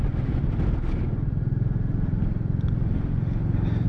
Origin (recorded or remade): recorded